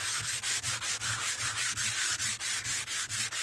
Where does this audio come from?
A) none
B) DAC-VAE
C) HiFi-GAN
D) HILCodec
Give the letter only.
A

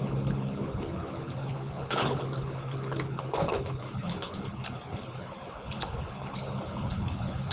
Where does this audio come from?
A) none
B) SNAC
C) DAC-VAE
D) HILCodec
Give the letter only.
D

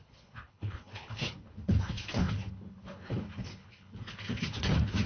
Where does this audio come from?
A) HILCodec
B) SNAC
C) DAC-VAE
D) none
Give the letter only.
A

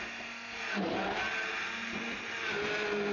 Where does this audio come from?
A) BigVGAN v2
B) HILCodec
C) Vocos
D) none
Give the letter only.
D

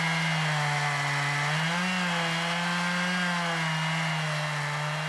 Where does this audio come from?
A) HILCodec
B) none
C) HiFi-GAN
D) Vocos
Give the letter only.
B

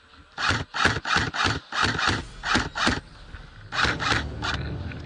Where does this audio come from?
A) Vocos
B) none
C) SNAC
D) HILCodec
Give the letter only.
B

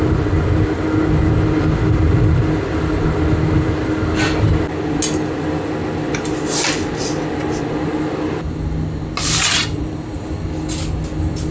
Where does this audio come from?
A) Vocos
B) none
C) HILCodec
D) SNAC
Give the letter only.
B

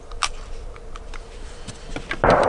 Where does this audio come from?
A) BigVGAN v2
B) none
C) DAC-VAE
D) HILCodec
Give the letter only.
B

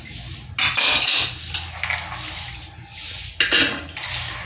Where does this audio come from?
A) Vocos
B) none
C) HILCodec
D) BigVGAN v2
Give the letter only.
B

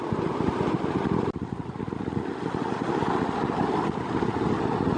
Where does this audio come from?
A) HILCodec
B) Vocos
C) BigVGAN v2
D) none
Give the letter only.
D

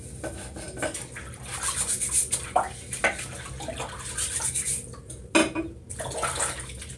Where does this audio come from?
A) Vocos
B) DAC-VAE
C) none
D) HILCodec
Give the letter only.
C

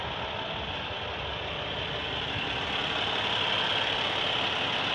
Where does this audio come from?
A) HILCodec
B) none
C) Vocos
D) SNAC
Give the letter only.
B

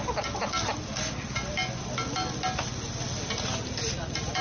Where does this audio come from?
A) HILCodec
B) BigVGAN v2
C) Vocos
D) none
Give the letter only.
D